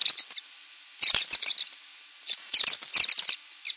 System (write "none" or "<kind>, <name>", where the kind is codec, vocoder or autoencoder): none